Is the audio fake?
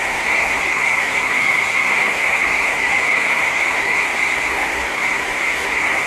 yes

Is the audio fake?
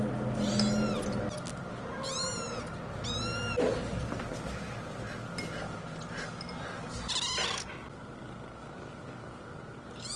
no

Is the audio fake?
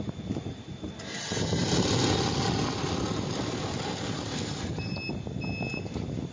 no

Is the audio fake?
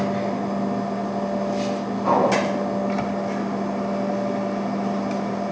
no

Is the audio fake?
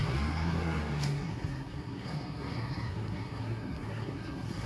yes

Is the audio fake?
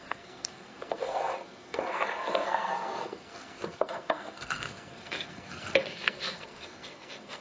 yes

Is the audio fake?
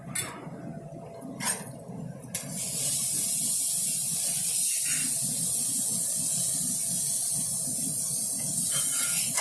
no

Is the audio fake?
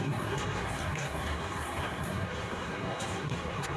yes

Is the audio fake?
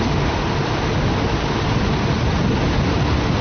no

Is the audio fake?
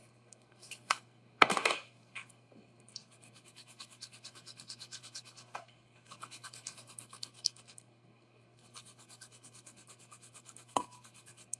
yes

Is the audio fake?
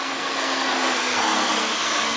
yes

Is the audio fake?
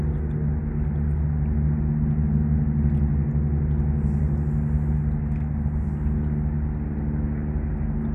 no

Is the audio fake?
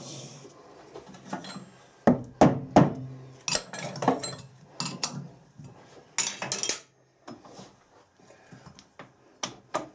no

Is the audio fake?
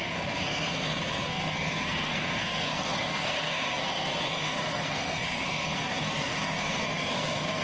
yes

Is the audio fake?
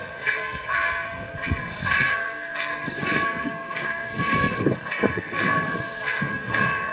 yes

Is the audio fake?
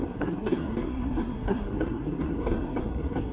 yes